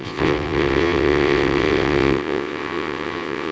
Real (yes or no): no